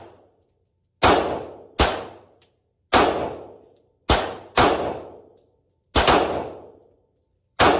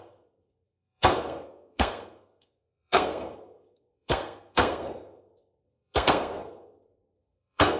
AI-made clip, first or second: second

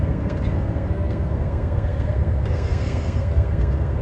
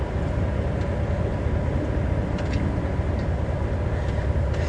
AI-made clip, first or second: first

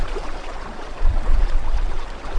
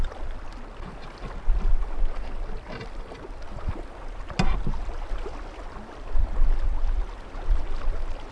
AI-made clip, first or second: first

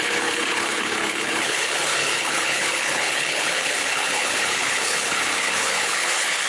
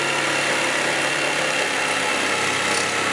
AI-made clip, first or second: first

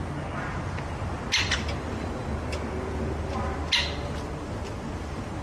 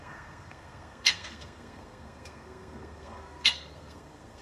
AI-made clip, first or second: second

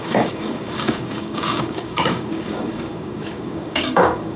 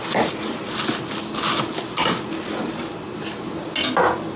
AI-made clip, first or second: first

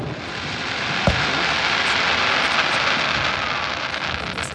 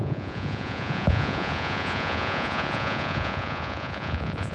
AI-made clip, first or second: second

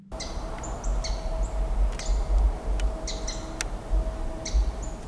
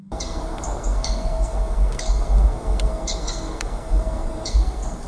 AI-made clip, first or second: second